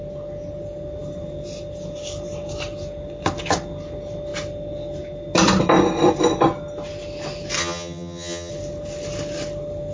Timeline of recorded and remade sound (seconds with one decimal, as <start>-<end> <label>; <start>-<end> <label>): 0.0-7.6 recorded; 7.6-8.5 remade; 8.5-9.9 recorded